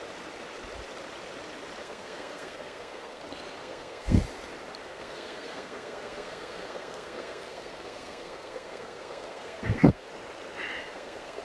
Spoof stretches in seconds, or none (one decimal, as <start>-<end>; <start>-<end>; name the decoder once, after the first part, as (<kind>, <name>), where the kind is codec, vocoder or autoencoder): 1.8-3.2 (codec, SNAC); 3.6-4.2; 4.8-10.1; 10.8-11.4